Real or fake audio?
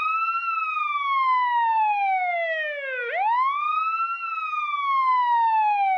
real